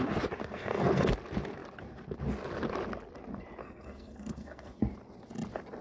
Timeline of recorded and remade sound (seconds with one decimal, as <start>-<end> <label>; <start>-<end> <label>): 0.0-0.4 recorded; 0.4-1.1 remade; 1.1-3.6 recorded; 3.6-4.8 remade; 4.8-5.8 recorded